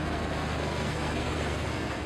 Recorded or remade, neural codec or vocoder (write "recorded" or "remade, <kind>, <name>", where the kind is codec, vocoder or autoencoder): remade, codec, SNAC